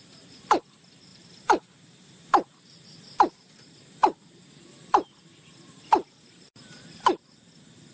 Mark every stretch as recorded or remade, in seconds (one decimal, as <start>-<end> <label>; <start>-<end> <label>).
0.0-7.9 remade